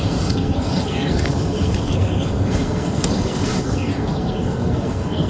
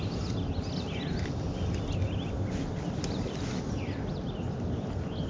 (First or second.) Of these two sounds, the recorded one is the second